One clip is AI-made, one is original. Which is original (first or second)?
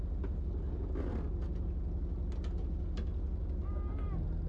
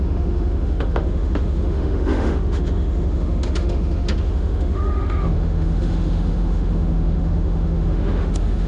first